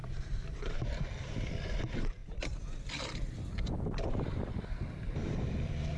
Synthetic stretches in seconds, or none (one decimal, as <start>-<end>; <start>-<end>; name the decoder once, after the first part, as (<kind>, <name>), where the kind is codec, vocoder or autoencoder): 0.0-1.0 (vocoder, BigVGAN v2)